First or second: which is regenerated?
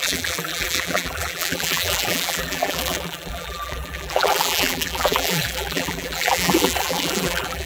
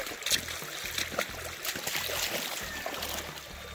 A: first